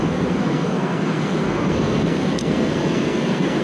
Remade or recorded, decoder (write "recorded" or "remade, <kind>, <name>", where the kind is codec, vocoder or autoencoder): remade, codec, SNAC